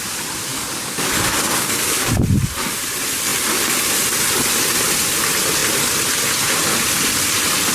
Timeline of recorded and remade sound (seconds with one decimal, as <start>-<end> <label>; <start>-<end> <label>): 0.0-0.5 recorded; 0.5-2.1 remade; 2.1-7.7 recorded